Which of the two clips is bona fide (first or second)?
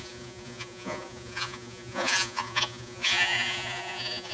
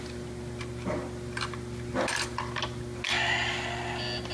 second